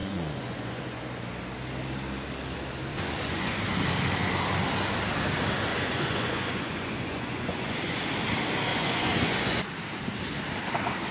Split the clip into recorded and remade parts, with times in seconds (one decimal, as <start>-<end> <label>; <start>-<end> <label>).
0.0-1.0 remade; 1.0-2.9 recorded; 2.9-3.6 remade; 3.6-5.7 recorded; 5.7-8.0 remade; 8.0-8.7 recorded; 8.7-9.6 remade; 9.6-11.1 recorded